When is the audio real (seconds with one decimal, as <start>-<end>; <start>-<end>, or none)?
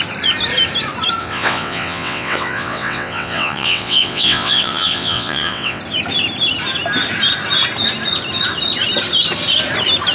0.0-1.2; 5.8-10.1